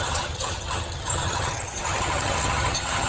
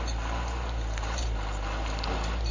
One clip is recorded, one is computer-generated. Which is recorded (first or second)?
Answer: second